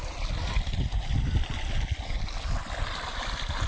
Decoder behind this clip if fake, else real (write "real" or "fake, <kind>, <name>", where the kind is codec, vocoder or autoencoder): real